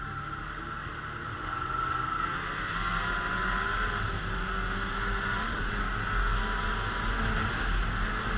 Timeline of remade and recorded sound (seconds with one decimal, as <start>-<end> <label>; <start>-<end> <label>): 0.0-8.4 recorded